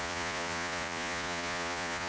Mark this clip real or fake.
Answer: fake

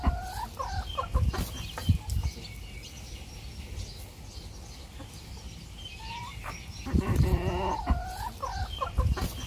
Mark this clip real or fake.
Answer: real